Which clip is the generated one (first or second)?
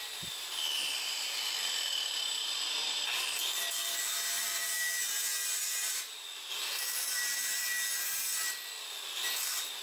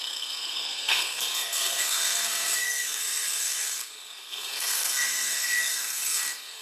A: second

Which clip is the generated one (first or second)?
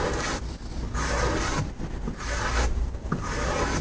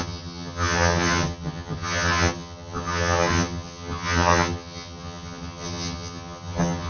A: second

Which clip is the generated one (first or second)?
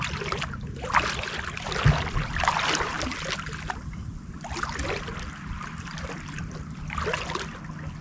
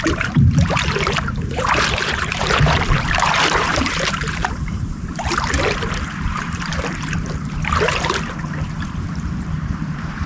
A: second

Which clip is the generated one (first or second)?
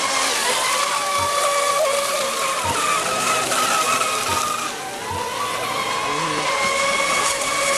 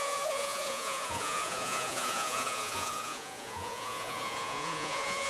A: second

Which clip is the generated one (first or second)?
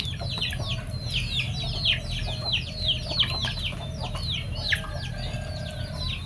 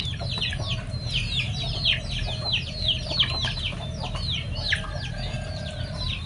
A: second